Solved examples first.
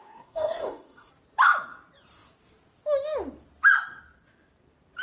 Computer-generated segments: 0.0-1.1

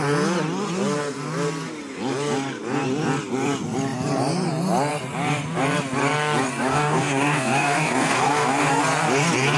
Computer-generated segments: 6.7-8.8

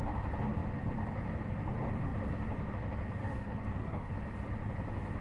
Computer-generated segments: 3.2-4.1

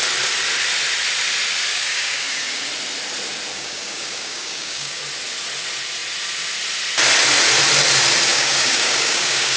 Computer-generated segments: 1.7-2.7; 3.5-5.0; 8.3-9.6

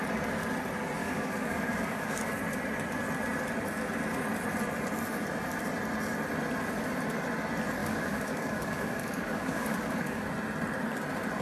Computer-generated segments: 1.0-2.3; 7.8-10.3